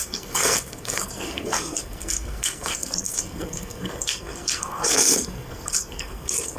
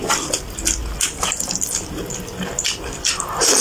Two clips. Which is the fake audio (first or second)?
first